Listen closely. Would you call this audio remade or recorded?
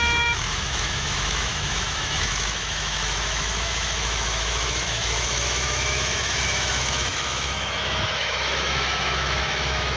remade